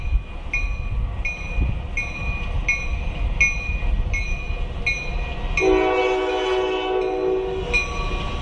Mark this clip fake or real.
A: real